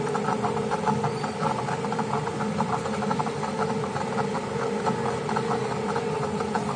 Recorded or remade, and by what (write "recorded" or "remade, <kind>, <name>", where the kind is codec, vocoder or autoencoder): recorded